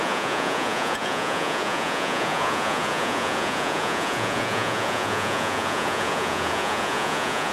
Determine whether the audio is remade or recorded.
remade